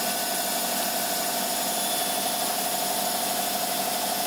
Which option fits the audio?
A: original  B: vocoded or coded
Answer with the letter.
A